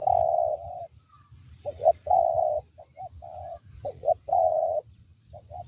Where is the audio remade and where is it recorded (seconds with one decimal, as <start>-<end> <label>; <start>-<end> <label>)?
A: 0.0-1.7 recorded; 1.7-2.2 remade; 2.2-3.5 recorded; 3.5-5.7 remade